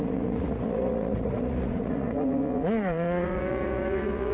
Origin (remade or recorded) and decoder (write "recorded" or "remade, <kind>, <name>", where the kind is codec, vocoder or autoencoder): remade, vocoder, Vocos